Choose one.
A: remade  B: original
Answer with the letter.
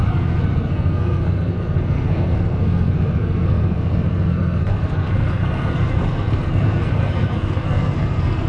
A